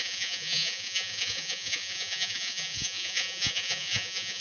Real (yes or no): no